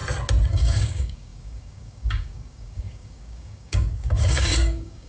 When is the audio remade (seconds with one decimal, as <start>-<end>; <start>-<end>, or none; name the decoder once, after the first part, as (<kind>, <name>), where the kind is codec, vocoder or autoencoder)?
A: 0.5-5.1 (codec, DAC)